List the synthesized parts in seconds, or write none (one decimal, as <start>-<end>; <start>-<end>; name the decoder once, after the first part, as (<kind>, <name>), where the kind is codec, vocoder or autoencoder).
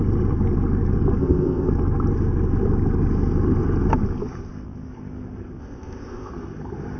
1.2-1.7 (codec, ZipCodec); 5.6-6.3